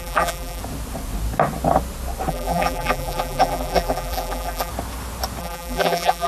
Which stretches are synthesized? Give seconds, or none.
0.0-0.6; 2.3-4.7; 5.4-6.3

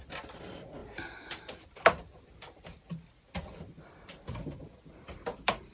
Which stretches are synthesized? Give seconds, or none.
0.0-5.7

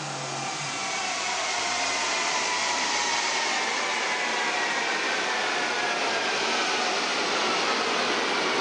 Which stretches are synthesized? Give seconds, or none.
0.8-2.9; 6.6-7.3

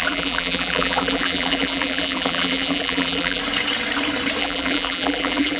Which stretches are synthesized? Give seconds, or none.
0.0-3.4; 4.4-5.6